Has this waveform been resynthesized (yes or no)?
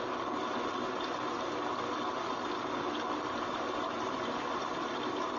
no